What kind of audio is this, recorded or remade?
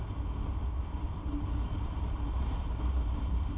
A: recorded